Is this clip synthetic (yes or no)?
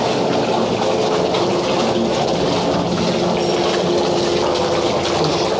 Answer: no